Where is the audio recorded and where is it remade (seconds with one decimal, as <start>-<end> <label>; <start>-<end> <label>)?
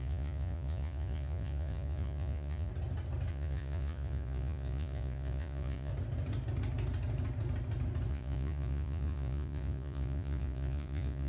0.0-2.7 remade; 2.7-3.3 recorded; 3.3-5.9 remade; 5.9-8.1 recorded; 8.1-11.3 remade